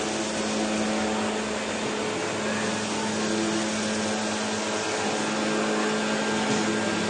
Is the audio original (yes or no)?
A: yes